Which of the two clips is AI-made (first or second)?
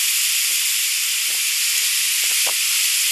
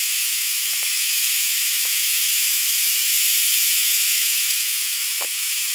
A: second